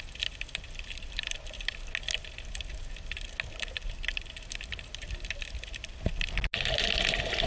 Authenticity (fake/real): real